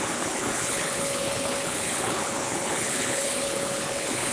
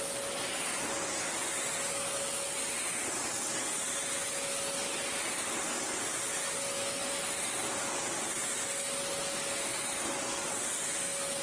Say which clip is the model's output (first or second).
first